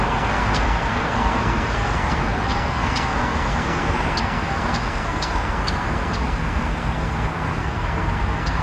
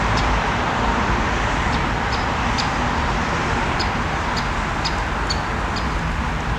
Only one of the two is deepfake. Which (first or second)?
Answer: first